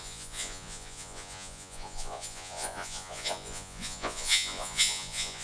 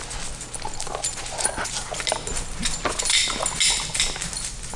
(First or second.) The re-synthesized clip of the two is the first